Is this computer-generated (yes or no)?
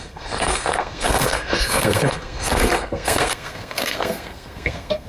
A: yes